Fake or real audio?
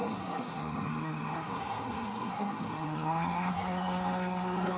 fake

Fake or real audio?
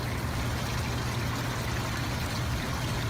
real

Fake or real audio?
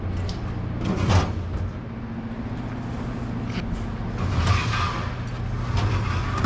real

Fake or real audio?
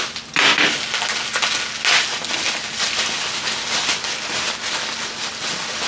real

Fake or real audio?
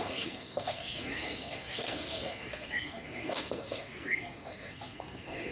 fake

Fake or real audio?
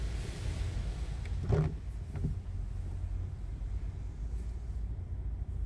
real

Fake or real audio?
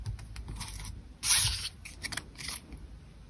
real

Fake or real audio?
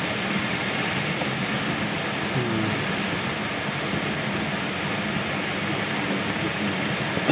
real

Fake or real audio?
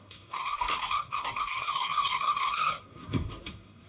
fake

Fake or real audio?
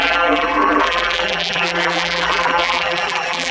fake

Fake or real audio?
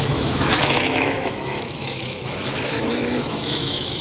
fake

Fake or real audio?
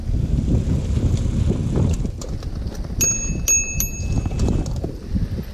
real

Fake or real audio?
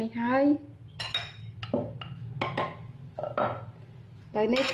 real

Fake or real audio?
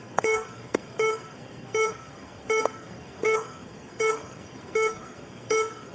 fake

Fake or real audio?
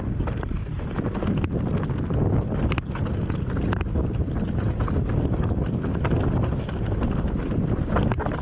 real